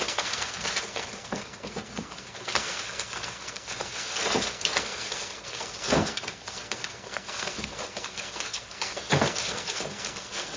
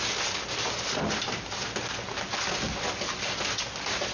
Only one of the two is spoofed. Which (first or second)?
first